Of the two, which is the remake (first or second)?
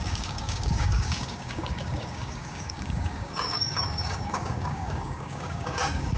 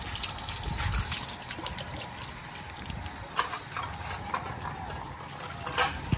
first